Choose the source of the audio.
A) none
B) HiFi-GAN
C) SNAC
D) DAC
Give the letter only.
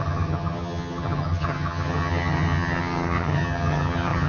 B